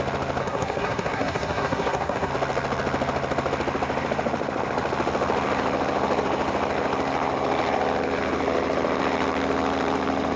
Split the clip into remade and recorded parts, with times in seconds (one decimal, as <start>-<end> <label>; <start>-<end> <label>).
0.0-0.4 recorded; 0.4-2.3 remade; 2.3-10.4 recorded